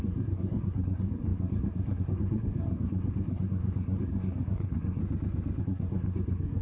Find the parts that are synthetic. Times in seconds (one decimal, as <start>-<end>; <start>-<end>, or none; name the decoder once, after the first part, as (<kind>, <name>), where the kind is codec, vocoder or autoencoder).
0.0-5.0 (codec, SNAC); 5.6-6.6